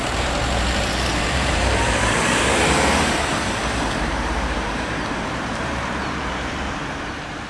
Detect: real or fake fake